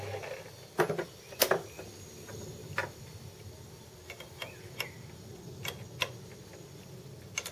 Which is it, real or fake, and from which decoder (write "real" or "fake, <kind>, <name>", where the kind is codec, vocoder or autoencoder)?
real